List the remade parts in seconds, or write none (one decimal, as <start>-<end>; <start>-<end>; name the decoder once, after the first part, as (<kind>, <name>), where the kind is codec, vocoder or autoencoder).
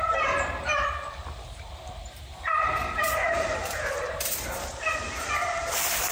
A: 2.3-6.1 (vocoder, BigVGAN v2)